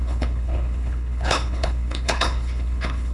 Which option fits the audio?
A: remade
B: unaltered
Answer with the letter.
A